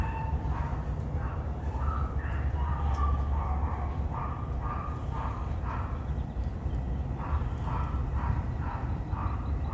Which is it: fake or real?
real